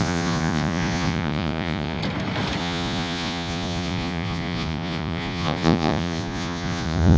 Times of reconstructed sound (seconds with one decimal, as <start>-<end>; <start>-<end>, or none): 0.0-2.0; 2.6-7.2